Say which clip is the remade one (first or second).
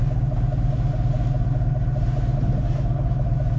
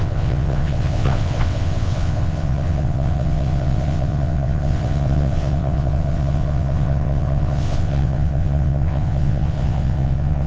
second